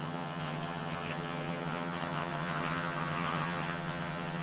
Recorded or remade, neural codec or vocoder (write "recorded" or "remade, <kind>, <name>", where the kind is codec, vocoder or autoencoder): remade, vocoder, HiFi-GAN